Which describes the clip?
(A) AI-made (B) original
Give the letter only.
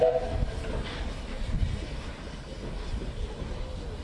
B